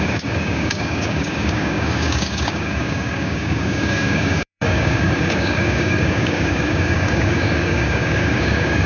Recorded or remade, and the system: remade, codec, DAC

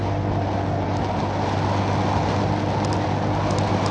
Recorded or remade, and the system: recorded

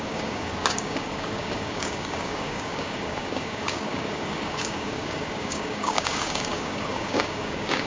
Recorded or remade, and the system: remade, codec, DAC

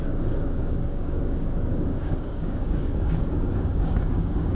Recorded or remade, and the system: remade, codec, DAC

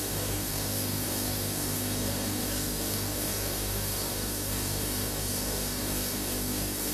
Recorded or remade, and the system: remade, codec, DAC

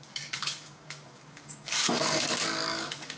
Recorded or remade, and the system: remade, codec, DAC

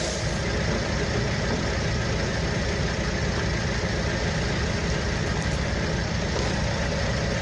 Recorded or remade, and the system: recorded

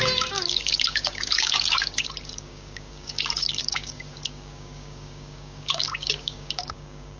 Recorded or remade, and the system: remade, codec, DAC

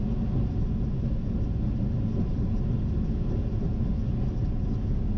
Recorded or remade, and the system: recorded